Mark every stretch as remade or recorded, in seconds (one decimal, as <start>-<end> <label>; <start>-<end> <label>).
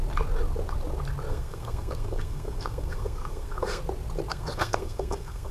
0.0-1.3 recorded; 1.3-3.8 remade; 3.8-4.3 recorded; 4.3-5.5 remade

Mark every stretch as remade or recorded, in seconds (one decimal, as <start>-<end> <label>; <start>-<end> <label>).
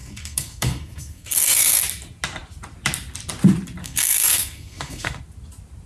0.0-1.8 remade; 1.8-3.8 recorded; 3.8-5.2 remade; 5.2-5.9 recorded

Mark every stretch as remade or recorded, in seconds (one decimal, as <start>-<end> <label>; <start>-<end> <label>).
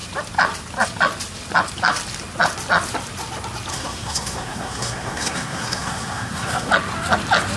0.0-3.7 recorded; 3.7-6.7 remade; 6.7-7.6 recorded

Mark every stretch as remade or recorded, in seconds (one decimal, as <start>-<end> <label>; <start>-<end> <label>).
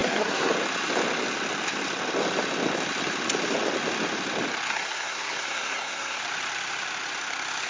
0.0-0.5 remade; 0.5-4.7 recorded; 4.7-6.2 remade; 6.2-7.7 recorded